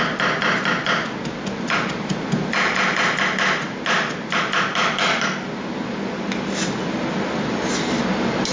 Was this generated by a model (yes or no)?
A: no